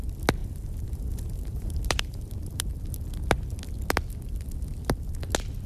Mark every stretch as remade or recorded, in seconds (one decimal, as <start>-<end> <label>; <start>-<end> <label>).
0.0-0.4 recorded; 0.4-2.3 remade; 2.3-5.7 recorded